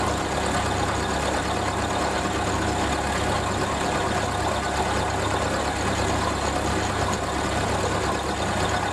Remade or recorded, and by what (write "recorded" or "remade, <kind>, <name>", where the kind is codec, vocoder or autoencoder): recorded